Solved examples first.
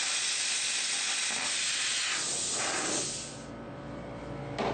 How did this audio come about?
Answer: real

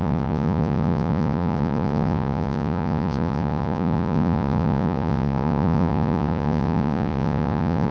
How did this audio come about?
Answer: fake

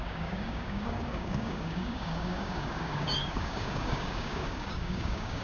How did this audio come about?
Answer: fake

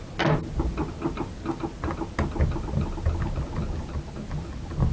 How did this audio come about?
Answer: real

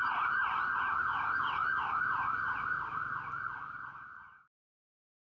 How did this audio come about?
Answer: real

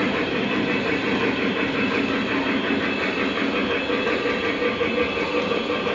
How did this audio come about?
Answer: real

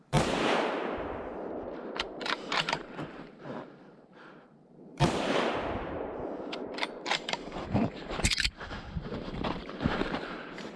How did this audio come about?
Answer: fake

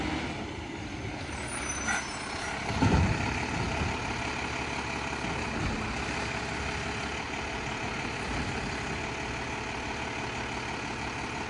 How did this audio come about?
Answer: real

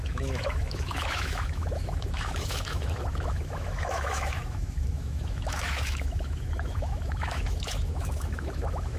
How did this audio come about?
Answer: fake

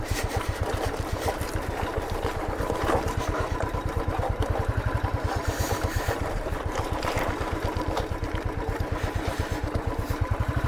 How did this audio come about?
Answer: fake